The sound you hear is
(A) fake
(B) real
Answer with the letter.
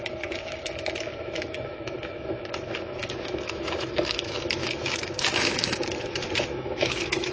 A